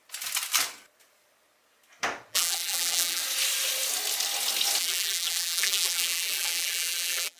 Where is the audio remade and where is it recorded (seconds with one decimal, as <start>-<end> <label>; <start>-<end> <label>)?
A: 0.0-2.3 recorded; 2.3-3.2 remade; 3.2-4.8 recorded; 4.8-7.4 remade